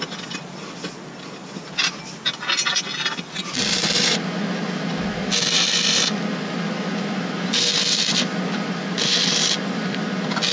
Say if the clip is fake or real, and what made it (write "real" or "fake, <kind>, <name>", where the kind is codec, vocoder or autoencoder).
real